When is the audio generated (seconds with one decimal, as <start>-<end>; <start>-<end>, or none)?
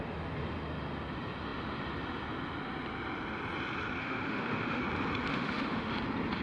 4.0-4.8; 5.3-5.9